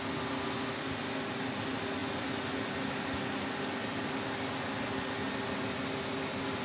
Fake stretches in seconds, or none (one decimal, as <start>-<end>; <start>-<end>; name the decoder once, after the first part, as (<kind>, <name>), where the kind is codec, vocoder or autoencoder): none